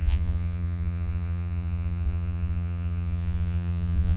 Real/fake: fake